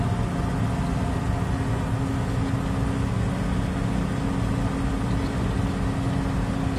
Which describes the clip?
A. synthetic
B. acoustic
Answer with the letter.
B